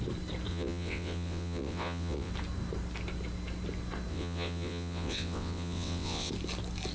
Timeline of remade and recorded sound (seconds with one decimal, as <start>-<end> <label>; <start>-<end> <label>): 0.0-0.5 recorded; 0.5-2.3 remade; 2.3-4.1 recorded; 4.1-6.3 remade; 6.3-6.9 recorded